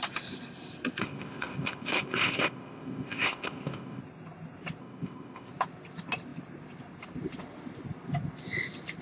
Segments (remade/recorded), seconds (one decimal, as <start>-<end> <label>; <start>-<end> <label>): 0.0-1.0 recorded; 1.0-4.0 remade; 4.0-4.8 recorded; 4.8-5.5 remade; 5.5-9.0 recorded